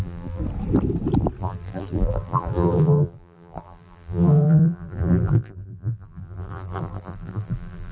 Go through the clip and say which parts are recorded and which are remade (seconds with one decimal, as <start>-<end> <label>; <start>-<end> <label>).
0.0-0.4 remade; 0.4-1.4 recorded; 1.4-7.9 remade